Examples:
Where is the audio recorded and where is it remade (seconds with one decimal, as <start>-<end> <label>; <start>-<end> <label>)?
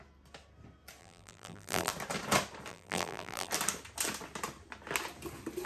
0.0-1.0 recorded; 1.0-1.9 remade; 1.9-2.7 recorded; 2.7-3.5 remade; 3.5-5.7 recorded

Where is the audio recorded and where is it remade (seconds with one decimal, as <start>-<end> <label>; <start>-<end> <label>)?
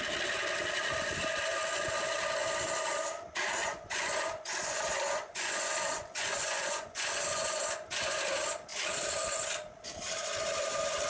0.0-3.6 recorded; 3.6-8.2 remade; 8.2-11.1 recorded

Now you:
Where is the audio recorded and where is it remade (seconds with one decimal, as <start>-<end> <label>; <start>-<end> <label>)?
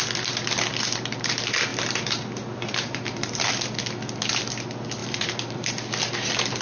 0.0-1.7 recorded; 1.7-3.5 remade; 3.5-5.0 recorded; 5.0-5.7 remade; 5.7-6.6 recorded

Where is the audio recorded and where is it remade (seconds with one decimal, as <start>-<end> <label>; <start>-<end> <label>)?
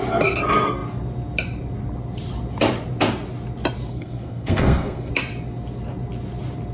0.0-3.9 recorded; 3.9-5.1 remade; 5.1-6.7 recorded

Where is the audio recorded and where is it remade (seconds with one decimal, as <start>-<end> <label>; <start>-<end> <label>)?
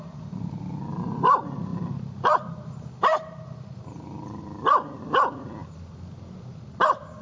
0.0-7.2 recorded